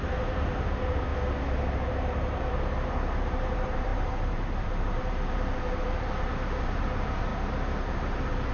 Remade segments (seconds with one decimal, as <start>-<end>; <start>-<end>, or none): 0.0-1.1; 1.6-7.3; 7.9-8.5